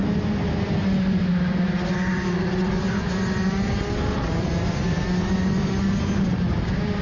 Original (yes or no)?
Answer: yes